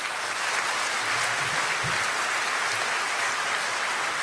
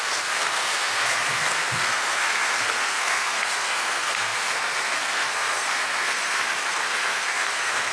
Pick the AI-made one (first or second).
second